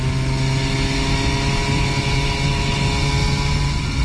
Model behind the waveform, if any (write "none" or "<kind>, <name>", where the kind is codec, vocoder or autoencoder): none